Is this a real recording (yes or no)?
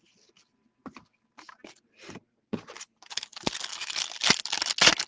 yes